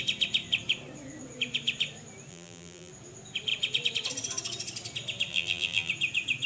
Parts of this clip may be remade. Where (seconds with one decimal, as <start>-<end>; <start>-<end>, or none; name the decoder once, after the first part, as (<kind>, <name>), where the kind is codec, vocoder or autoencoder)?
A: 2.3-2.9 (vocoder, BigVGAN v2); 5.3-5.9